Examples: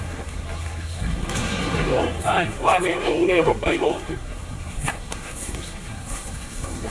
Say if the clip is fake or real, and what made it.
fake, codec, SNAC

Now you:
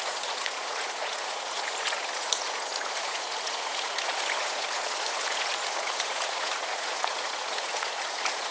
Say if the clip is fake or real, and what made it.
fake, vocoder, Vocos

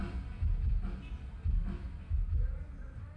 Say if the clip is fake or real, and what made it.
real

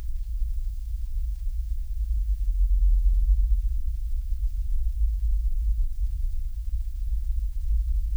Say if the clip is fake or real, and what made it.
fake, autoencoder, DAC-VAE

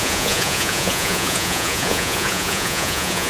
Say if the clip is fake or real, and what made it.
fake, vocoder, Vocos